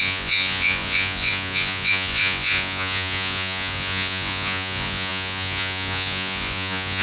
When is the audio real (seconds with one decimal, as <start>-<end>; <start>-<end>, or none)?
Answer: none